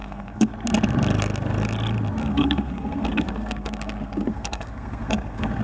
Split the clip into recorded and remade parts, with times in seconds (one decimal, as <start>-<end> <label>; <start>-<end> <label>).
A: 0.0-0.5 remade; 0.5-2.2 recorded; 2.2-5.6 remade